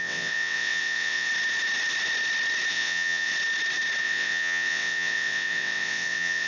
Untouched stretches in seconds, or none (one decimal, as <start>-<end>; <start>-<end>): 1.3-2.7; 3.3-4.0